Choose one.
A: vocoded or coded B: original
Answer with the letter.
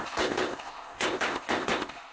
A